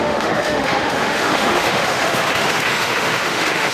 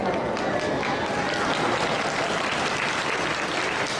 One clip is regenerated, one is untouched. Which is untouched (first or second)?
second